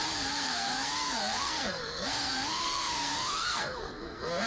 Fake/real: fake